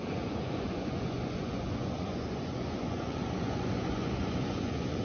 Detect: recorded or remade remade